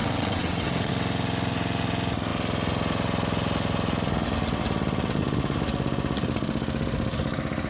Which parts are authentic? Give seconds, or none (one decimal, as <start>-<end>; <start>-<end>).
0.9-7.7